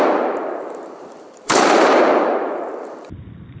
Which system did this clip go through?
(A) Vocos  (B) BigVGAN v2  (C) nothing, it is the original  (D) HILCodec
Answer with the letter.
B